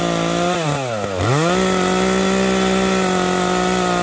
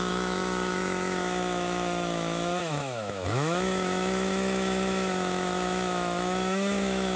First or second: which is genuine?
first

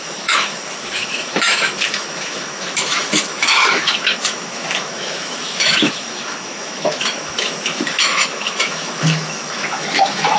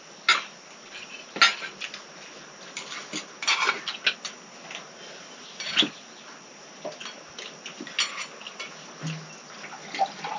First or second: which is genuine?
second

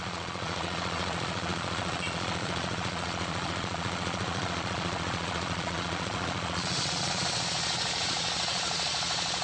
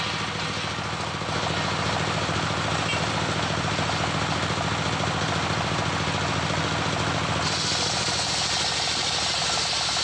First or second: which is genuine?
second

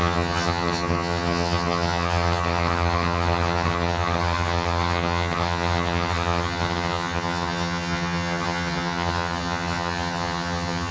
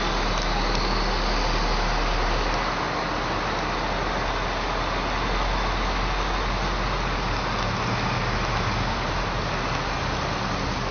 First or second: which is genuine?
second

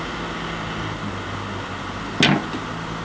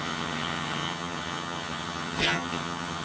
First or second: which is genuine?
first